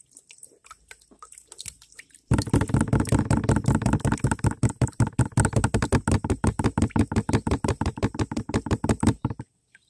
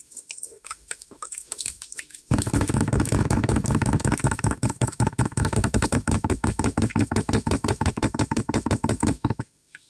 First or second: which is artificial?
second